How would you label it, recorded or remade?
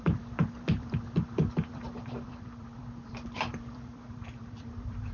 remade